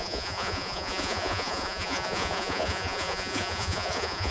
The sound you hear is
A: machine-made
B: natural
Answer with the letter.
A